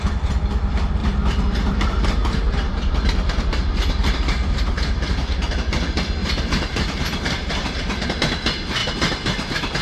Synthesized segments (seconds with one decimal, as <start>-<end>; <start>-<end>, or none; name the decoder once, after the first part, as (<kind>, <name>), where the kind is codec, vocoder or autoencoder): 1.0-5.5 (vocoder, BigVGAN v2); 6.2-8.2; 8.8-9.8